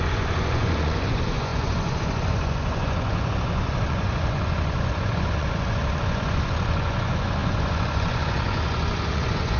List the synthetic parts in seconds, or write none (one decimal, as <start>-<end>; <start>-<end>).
0.0-9.6